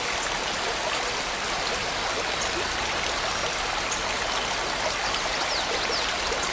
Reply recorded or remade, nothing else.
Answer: recorded